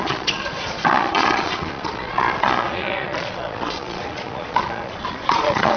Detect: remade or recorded remade